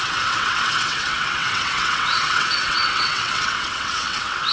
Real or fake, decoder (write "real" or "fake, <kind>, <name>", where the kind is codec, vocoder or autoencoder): fake, vocoder, WaveNeXt